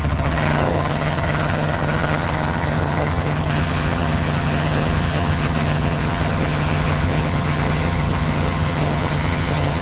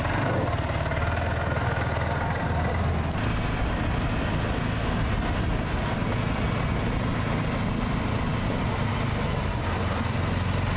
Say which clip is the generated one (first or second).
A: first